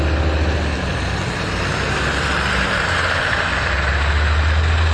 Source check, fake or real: real